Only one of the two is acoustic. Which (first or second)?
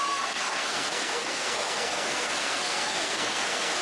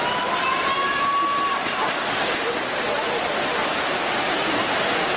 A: second